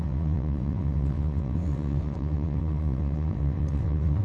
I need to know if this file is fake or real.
fake